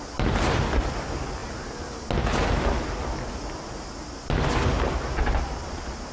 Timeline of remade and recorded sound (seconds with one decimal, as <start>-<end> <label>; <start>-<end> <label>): 0.0-6.1 recorded